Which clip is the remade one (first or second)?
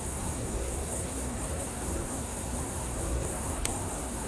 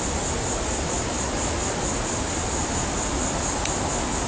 first